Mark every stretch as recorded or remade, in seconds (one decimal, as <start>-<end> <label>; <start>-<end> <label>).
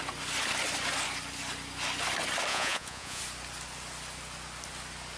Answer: 0.0-2.5 recorded; 2.5-3.2 remade; 3.2-5.2 recorded